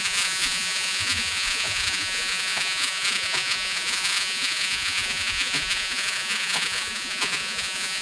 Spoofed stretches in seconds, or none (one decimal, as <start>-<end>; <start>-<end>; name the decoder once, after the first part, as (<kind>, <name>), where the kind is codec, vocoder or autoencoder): 0.0-8.0 (vocoder, Vocos)